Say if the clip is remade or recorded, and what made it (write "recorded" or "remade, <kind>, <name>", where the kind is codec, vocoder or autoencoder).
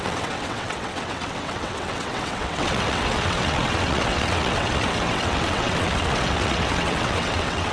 remade, vocoder, WaveNeXt